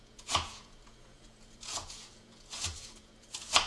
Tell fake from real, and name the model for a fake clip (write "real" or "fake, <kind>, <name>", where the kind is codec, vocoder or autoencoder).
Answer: fake, vocoder, Vocos